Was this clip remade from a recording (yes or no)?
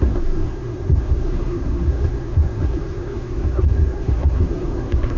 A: yes